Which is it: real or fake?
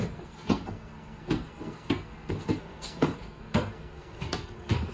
fake